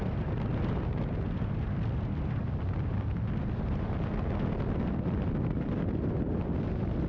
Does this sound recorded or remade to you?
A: recorded